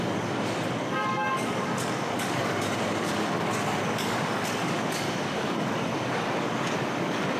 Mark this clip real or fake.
fake